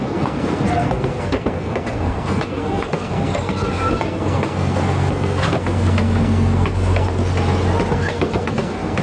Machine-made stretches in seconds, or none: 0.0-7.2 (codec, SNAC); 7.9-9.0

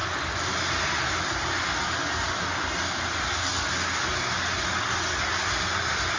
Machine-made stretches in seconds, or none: 3.0-3.5 (vocoder, BigVGAN v2); 5.4-6.2

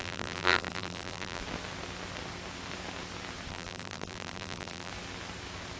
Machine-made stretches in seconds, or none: 0.0-1.4 (vocoder, BigVGAN v2); 3.5-4.9

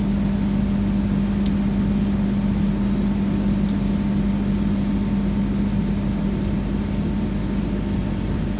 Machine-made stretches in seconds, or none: none